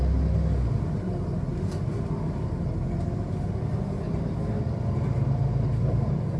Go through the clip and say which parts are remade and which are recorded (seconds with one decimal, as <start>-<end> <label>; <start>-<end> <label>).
0.0-6.4 recorded

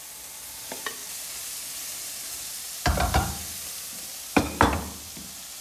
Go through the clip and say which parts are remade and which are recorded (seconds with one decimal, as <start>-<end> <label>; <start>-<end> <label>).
0.0-1.0 recorded; 1.0-4.4 remade; 4.4-5.6 recorded

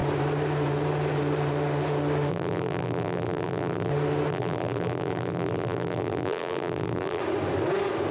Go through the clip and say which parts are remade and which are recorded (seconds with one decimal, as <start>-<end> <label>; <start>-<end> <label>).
0.0-2.3 recorded; 2.3-3.9 remade; 3.9-4.3 recorded; 4.3-7.2 remade; 7.2-8.1 recorded

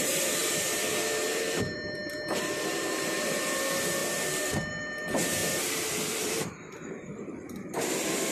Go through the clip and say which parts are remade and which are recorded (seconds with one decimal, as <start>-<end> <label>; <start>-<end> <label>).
0.0-8.3 remade

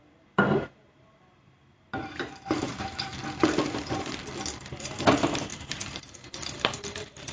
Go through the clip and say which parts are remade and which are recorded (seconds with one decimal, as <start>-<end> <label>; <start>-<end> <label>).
0.0-3.1 remade; 3.1-3.7 recorded; 3.7-4.2 remade; 4.2-4.7 recorded; 4.7-7.3 remade

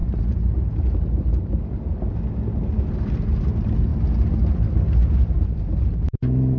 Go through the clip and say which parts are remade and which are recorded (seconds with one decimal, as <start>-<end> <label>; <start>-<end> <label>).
0.0-2.1 remade; 2.1-5.0 recorded; 5.0-6.6 remade